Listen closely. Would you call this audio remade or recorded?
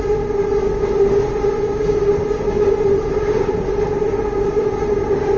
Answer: recorded